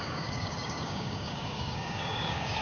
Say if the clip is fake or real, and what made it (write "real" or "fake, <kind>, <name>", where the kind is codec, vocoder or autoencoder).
fake, codec, DAC